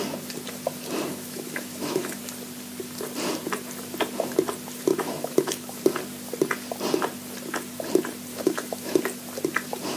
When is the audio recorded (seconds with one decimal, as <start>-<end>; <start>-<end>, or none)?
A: 0.0-1.1; 2.2-4.9; 5.8-8.3; 9.0-10.0